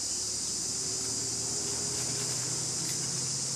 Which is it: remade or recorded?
recorded